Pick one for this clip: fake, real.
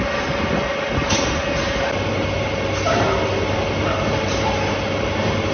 real